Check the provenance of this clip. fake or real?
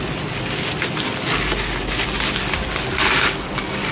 real